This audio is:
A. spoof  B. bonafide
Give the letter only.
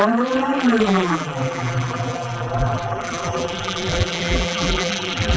A